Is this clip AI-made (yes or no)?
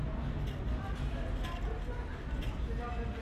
no